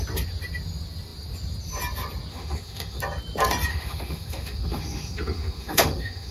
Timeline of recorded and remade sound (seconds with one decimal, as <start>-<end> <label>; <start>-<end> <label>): 0.0-2.3 recorded; 2.3-3.0 remade; 3.0-3.7 recorded; 3.7-6.3 remade

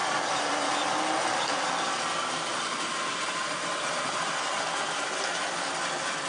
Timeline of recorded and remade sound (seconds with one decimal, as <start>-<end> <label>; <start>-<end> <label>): 0.0-6.3 recorded

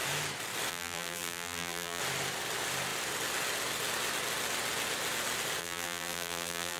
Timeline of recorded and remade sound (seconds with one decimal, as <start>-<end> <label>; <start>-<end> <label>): 0.0-0.7 recorded; 0.7-2.0 remade; 2.0-5.6 recorded; 5.6-6.8 remade

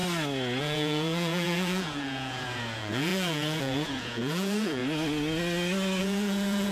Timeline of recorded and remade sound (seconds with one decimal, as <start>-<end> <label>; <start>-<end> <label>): 0.0-0.6 recorded; 0.6-4.8 remade; 4.8-6.0 recorded; 6.0-6.7 remade

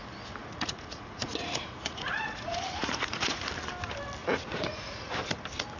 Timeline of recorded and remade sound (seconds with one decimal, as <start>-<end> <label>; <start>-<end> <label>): 0.0-0.4 recorded; 0.4-3.5 remade; 3.5-4.2 recorded; 4.2-5.1 remade; 5.1-5.8 recorded

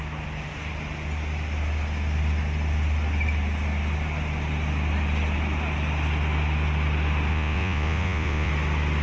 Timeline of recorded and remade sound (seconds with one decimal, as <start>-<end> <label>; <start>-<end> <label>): 0.0-7.3 recorded; 7.3-8.5 remade; 8.5-9.0 recorded

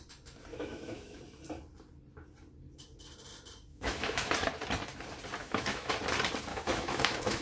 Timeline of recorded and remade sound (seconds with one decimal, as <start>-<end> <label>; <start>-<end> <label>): 0.0-0.5 recorded; 0.5-1.2 remade; 1.2-3.7 recorded; 3.7-4.3 remade; 4.3-5.4 recorded; 5.4-5.9 remade; 5.9-6.5 recorded; 6.5-7.4 remade

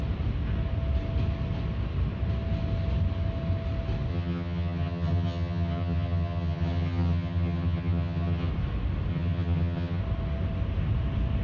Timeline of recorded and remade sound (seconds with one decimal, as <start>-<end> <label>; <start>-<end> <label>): 0.0-4.1 recorded; 4.1-8.5 remade; 8.5-9.1 recorded; 9.1-10.0 remade; 10.0-11.4 recorded